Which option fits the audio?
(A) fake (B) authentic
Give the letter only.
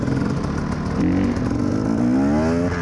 B